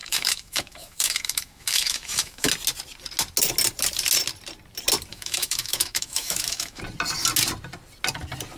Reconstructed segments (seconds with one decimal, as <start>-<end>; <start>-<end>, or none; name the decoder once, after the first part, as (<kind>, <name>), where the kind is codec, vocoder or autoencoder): 0.0-2.5 (autoencoder, DAC-VAE); 5.1-6.8